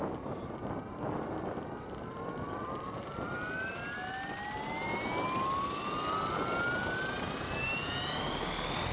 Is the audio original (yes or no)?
yes